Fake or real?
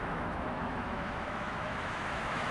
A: fake